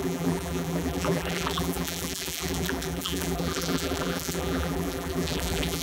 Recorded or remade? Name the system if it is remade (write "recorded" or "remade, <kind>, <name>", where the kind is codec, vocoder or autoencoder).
remade, vocoder, BigVGAN v2